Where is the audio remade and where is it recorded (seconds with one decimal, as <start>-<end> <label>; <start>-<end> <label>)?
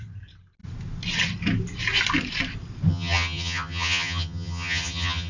0.0-2.9 recorded; 2.9-5.3 remade